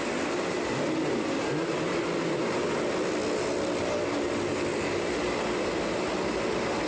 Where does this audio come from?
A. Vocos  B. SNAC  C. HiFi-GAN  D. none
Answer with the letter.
D